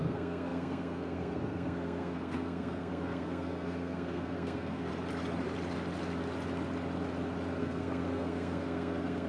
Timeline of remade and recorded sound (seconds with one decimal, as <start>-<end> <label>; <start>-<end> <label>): 0.0-4.9 remade; 4.9-7.6 recorded; 7.6-9.3 remade